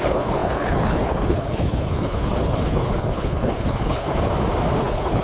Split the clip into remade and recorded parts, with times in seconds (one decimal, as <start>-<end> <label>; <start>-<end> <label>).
0.0-4.3 remade; 4.3-4.8 recorded; 4.8-5.2 remade